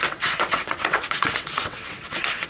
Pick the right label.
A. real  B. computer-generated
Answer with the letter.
B